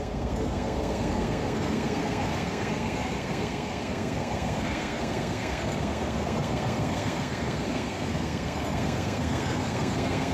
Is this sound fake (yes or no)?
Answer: yes